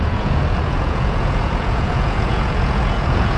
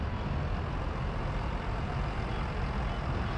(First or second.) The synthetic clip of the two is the first